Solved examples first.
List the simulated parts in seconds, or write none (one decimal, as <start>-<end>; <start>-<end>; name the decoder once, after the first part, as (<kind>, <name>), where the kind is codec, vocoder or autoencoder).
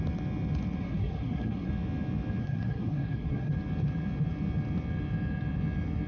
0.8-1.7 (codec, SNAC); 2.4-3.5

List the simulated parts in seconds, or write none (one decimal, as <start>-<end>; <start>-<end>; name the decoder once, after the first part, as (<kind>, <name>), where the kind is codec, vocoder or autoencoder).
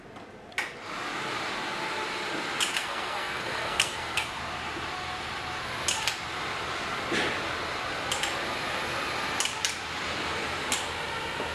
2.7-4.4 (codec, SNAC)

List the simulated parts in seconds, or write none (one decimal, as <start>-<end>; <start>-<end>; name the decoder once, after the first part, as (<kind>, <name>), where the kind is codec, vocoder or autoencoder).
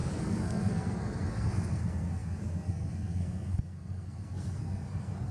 0.0-5.3 (codec, SNAC)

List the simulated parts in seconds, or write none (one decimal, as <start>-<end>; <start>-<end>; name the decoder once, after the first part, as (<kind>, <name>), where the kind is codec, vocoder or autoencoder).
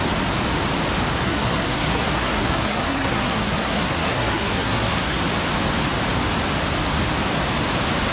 1.1-5.2 (codec, SNAC)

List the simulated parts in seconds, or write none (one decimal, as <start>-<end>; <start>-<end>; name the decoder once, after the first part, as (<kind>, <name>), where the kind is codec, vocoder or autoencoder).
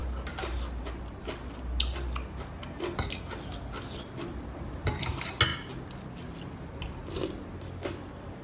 none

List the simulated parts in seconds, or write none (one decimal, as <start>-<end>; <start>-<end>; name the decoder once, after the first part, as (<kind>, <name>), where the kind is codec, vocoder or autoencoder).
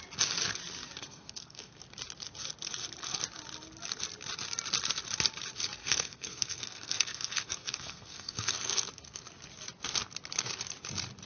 1.0-1.8 (codec, SNAC); 5.8-9.2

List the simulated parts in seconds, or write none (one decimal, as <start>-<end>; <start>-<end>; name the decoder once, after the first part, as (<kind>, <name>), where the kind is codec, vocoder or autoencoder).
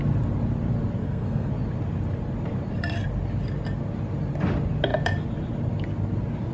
1.0-1.5 (codec, SNAC)